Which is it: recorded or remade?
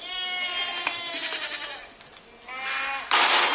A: recorded